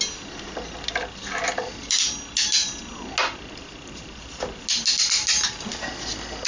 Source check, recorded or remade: recorded